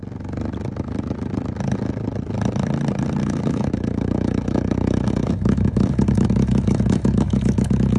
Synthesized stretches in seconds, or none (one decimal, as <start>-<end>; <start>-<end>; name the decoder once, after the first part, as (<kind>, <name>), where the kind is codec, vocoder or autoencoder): 3.2-8.0 (autoencoder, DAC-VAE)